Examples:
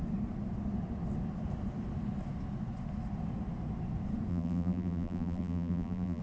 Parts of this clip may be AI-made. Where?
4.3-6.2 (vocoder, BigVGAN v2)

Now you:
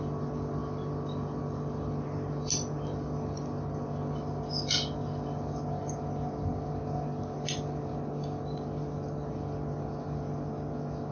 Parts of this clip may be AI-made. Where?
none

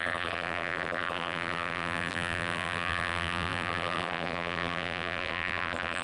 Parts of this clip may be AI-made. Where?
0.0-6.0 (vocoder, BigVGAN v2)